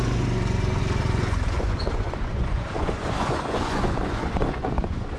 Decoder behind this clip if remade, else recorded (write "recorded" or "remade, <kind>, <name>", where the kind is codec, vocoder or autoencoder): remade, vocoder, Vocos